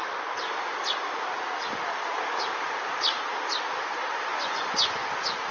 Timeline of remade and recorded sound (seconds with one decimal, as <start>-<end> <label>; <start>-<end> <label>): 0.0-4.3 recorded; 4.3-5.1 remade; 5.1-5.5 recorded